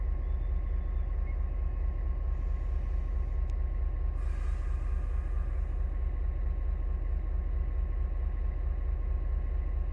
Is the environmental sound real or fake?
real